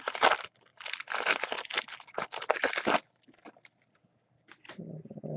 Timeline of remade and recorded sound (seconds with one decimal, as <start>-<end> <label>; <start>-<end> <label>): 0.0-5.4 recorded